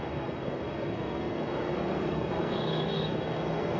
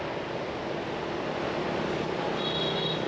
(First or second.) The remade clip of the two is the first